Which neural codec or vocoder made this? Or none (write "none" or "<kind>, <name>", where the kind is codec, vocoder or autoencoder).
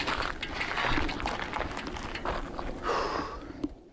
none